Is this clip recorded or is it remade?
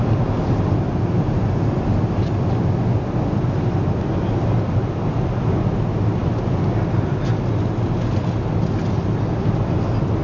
recorded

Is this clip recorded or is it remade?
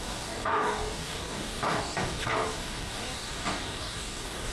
remade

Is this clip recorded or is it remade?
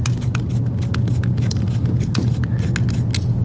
recorded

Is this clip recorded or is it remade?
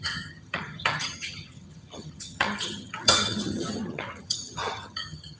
remade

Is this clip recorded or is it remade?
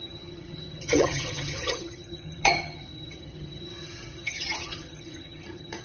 remade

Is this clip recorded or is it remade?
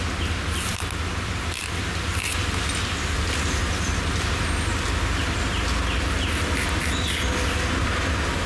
recorded